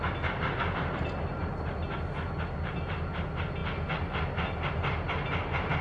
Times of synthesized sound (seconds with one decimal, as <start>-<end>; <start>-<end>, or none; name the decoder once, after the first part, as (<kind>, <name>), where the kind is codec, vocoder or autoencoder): none